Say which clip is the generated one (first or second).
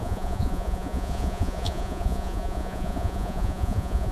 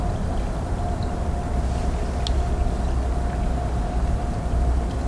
first